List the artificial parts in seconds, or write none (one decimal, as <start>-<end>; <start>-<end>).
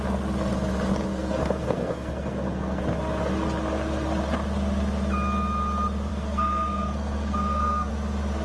1.1-2.8; 6.1-7.9